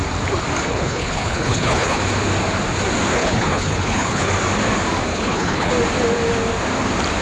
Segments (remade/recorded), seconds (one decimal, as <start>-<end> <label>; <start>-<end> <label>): 0.0-0.6 recorded; 0.6-2.0 remade; 2.0-3.1 recorded; 3.1-4.3 remade; 4.3-5.1 recorded; 5.1-5.7 remade; 5.7-7.2 recorded